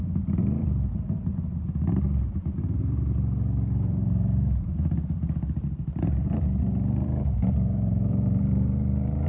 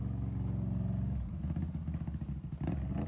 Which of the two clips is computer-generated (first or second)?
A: first